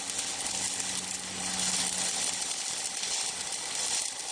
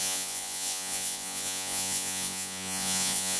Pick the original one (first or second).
first